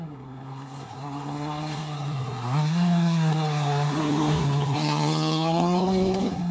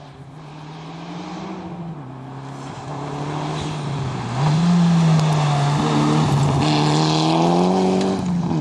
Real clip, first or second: second